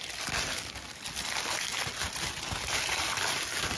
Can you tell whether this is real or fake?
real